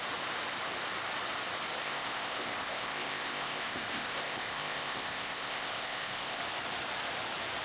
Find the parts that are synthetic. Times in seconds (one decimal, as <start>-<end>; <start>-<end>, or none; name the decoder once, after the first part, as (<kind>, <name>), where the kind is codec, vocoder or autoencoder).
1.8-6.4 (codec, ZipCodec)